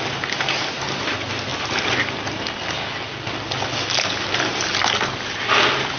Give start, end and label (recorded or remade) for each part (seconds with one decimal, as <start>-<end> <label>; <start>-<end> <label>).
0.0-6.0 recorded